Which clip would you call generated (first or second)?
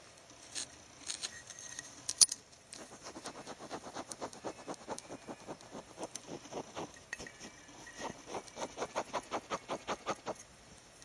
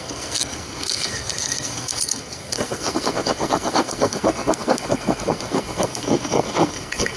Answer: second